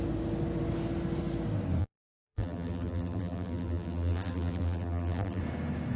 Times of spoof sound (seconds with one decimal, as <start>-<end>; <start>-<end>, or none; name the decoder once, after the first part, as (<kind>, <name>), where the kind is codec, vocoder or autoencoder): 1.8-5.4 (vocoder, BigVGAN v2)